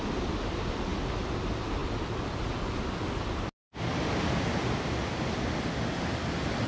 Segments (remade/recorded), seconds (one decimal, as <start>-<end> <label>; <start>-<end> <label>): 0.0-6.7 recorded